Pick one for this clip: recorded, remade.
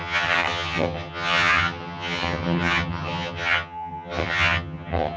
remade